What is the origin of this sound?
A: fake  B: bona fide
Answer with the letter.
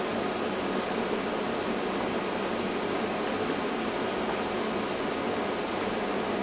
B